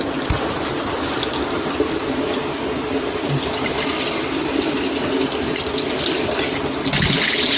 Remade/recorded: recorded